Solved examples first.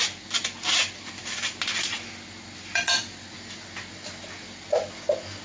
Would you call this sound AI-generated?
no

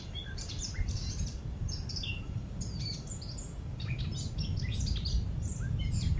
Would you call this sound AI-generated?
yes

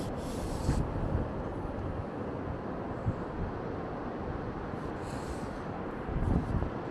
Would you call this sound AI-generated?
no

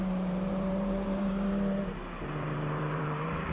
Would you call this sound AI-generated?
yes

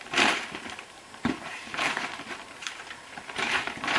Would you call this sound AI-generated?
yes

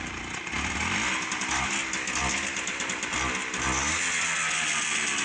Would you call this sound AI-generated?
yes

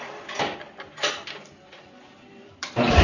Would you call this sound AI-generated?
yes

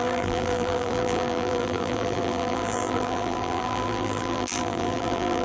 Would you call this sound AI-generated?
yes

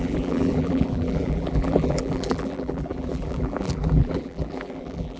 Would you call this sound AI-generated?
yes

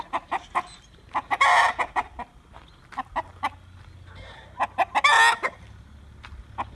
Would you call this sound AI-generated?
no